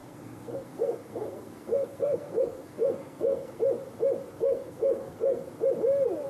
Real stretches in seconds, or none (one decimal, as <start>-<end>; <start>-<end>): 3.6-4.3; 5.5-6.3